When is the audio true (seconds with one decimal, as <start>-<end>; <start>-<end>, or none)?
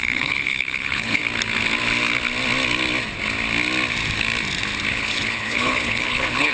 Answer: 1.2-4.9